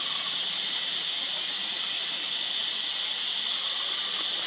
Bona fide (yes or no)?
yes